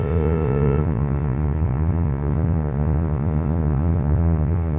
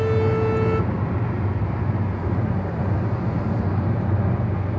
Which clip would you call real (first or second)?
second